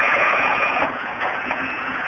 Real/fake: fake